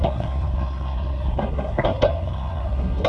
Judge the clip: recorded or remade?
remade